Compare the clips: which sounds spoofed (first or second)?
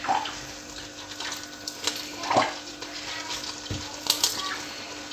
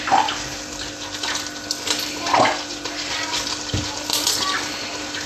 second